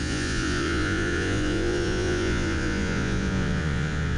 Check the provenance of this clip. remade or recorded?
remade